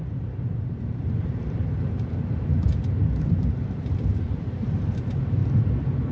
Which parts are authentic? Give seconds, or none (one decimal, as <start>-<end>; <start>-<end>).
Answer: 5.4-6.1